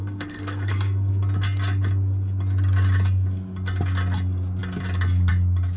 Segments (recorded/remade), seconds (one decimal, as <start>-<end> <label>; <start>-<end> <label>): 0.0-1.1 remade; 1.1-5.8 recorded